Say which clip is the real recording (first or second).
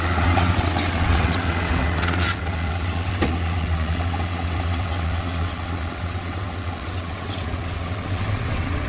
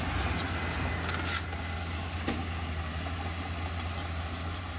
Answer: second